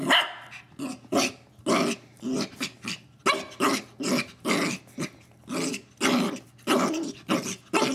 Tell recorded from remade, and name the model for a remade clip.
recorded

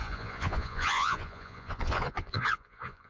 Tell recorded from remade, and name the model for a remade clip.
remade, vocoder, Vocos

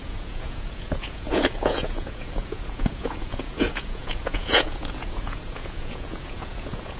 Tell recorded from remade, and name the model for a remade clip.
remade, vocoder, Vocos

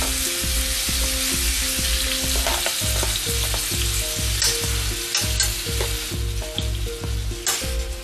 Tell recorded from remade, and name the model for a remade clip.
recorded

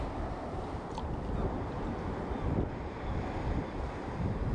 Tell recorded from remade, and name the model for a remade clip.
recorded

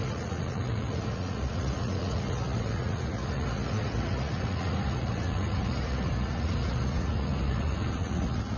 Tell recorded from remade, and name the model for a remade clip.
remade, vocoder, Vocos